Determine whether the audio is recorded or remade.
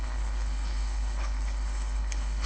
remade